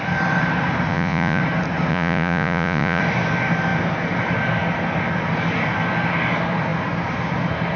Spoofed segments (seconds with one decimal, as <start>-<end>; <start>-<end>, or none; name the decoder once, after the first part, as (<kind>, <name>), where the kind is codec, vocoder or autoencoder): 0.9-1.4 (vocoder, Vocos); 1.9-3.0